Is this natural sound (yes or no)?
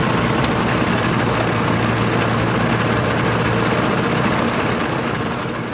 yes